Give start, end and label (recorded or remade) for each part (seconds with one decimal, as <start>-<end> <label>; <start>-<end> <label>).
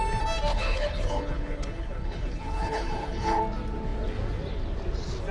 0.0-0.5 recorded; 0.5-3.4 remade; 3.4-5.3 recorded